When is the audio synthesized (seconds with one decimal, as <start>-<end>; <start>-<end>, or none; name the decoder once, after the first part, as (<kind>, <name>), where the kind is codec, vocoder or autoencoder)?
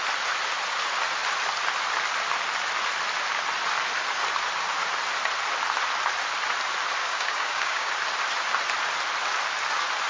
7.0-7.9 (codec, DAC)